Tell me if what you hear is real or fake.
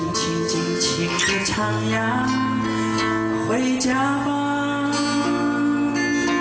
real